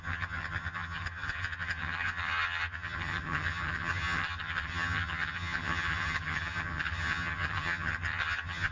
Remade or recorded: remade